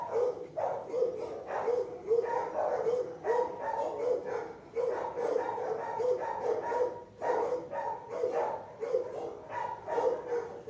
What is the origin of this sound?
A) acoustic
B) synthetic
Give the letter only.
A